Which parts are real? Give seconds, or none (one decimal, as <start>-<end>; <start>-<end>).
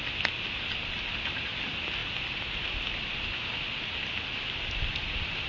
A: 0.0-5.5